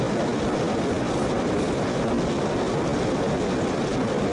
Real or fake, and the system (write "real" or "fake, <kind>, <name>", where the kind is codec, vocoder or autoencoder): real